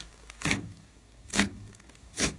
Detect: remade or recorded remade